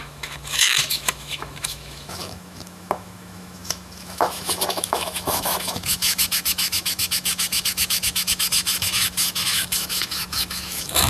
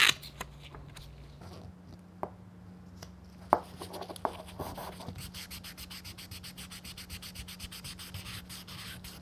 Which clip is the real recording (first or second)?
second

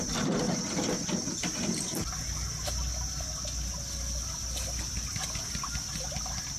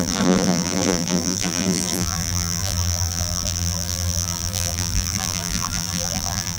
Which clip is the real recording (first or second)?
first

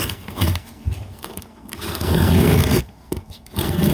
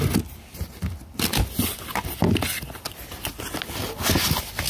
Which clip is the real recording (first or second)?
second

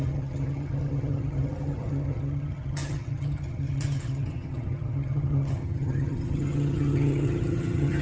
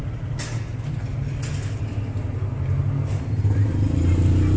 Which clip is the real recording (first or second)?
second